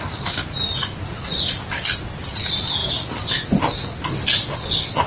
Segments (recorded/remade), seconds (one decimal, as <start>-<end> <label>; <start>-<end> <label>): 0.0-5.1 recorded